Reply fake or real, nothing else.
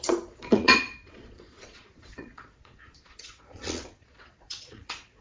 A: fake